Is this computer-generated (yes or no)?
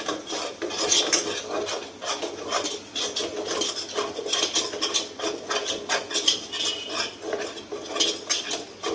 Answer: no